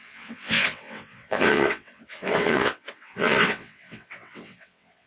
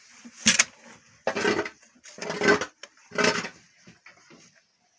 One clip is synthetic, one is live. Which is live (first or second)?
second